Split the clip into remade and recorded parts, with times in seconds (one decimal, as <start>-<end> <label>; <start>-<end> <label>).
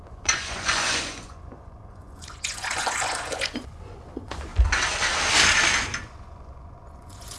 0.0-4.5 remade; 4.5-6.0 recorded; 6.0-7.4 remade